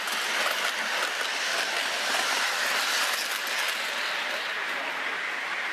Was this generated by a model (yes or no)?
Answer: no